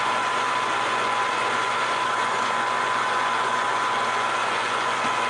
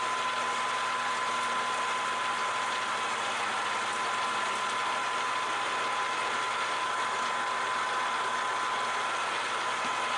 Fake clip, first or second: first